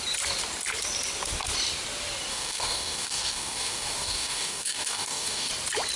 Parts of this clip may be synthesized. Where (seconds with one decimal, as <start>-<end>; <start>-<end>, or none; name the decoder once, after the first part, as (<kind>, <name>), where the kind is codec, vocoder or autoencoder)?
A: 2.3-5.5 (codec, DAC)